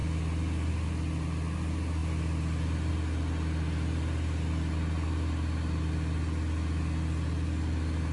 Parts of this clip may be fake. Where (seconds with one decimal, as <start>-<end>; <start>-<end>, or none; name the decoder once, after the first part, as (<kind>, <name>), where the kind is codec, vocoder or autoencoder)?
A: none